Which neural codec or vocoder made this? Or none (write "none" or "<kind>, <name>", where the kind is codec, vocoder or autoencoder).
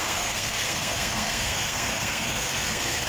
codec, SNAC